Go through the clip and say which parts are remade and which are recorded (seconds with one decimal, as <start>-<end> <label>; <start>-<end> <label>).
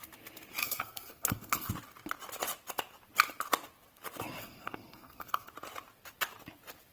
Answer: 0.0-0.6 recorded; 0.6-1.7 remade; 1.7-4.4 recorded; 4.4-5.5 remade; 5.5-6.9 recorded